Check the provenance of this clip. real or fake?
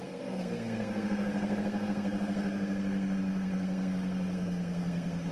fake